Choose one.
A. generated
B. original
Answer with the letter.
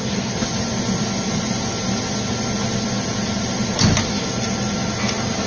B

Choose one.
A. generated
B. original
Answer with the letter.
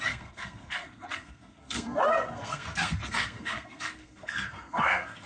A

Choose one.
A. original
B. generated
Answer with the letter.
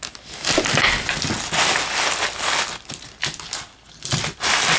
A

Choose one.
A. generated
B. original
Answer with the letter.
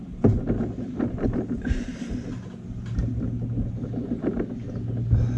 B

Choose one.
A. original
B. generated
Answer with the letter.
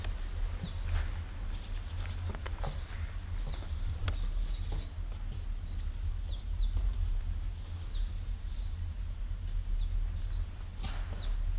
A